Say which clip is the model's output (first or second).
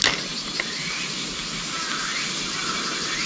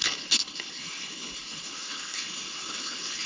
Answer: second